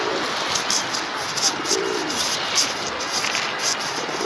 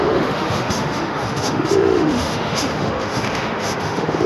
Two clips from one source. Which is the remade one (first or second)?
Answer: second